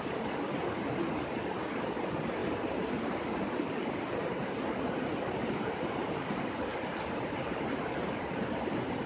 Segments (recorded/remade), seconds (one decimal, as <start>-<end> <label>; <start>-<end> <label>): 0.0-9.1 recorded